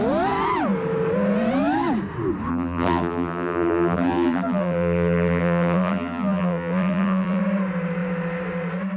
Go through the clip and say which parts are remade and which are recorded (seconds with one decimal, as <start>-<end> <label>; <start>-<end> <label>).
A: 0.0-2.5 recorded; 2.5-7.4 remade; 7.4-9.0 recorded